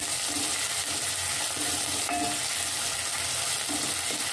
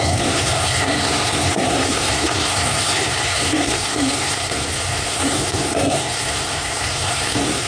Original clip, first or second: first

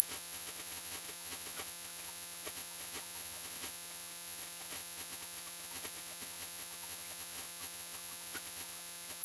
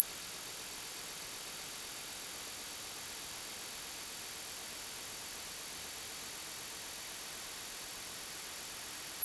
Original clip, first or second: second